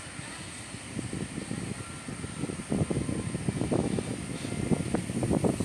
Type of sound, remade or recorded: recorded